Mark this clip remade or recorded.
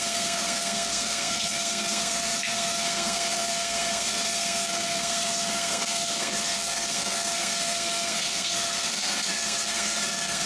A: remade